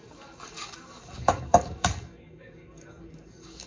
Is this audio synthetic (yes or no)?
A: yes